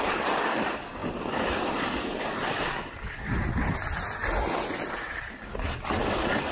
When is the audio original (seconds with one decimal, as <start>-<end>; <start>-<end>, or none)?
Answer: 0.0-6.5